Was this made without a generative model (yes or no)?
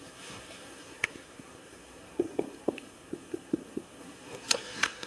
no